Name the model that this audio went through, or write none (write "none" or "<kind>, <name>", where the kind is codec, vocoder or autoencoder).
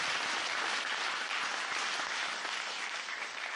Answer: none